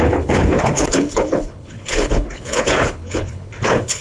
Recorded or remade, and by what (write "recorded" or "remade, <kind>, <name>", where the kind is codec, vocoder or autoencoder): remade, codec, HILCodec